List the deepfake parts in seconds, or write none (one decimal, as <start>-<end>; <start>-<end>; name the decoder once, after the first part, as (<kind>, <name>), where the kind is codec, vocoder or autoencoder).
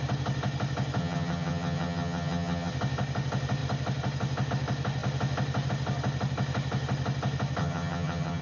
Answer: 1.0-2.7 (vocoder, HiFi-GAN); 7.6-8.4